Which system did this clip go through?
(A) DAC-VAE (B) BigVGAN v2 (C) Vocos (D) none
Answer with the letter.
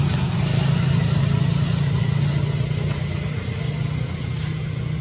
D